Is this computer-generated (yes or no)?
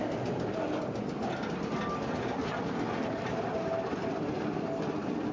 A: no